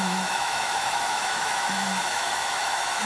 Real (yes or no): no